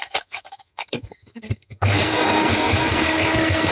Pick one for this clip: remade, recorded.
remade